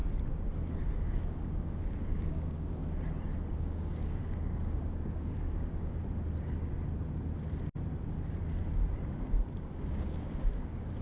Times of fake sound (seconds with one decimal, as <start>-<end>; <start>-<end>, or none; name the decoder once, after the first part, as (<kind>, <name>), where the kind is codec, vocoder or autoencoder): 1.0-2.8 (codec, DAC); 3.5-6.0; 9.1-11.0